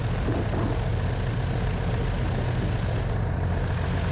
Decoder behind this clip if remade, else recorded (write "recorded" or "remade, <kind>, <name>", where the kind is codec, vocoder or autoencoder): recorded